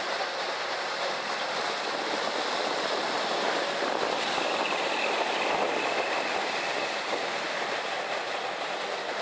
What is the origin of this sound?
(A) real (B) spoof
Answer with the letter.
A